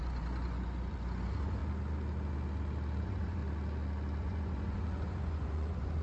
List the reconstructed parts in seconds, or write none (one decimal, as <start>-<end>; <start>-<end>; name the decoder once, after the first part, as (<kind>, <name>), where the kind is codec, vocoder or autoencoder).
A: 0.0-1.6 (vocoder, Vocos); 3.0-3.4; 4.2-6.0